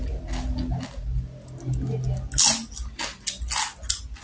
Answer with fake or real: real